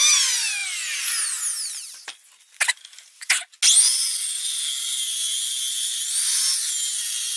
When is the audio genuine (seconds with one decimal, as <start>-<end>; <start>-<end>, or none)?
0.0-7.4

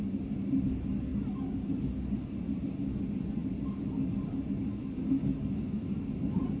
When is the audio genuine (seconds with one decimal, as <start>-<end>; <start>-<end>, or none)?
0.0-6.6

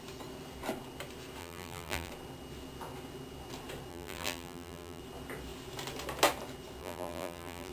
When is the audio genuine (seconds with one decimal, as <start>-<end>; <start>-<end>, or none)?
0.0-1.4; 2.1-3.9; 5.0-6.8